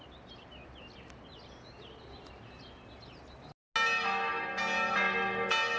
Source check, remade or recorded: recorded